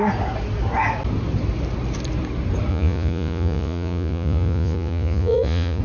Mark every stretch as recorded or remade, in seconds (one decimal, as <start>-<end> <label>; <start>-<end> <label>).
0.0-2.7 recorded; 2.7-5.8 remade